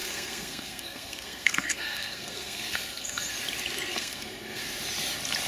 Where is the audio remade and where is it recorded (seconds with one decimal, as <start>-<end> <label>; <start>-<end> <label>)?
0.0-3.3 remade; 3.3-3.9 recorded; 3.9-4.6 remade; 4.6-5.5 recorded